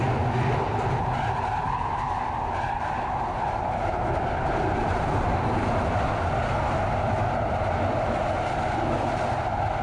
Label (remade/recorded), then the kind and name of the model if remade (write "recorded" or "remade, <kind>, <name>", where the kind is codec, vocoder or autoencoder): recorded